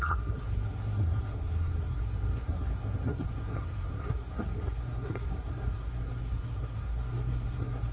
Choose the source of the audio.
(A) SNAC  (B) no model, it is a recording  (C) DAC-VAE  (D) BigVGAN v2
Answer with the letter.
A